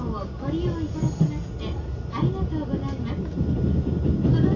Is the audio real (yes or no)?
yes